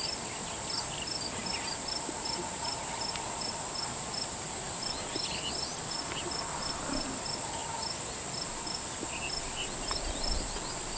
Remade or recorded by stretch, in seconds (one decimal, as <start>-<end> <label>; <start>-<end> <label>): 0.0-11.0 recorded